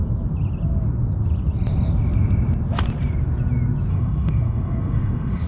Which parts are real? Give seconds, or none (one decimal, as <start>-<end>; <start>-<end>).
0.0-3.9